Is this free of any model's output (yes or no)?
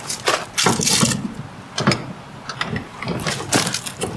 yes